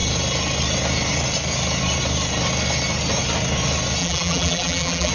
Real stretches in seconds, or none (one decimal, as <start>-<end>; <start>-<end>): 0.0-4.0